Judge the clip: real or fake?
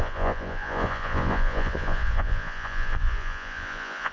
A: fake